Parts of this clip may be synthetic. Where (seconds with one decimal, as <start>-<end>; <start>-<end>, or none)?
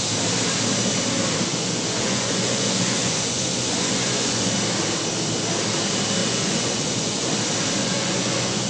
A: 1.5-4.4; 6.2-7.3; 7.8-8.7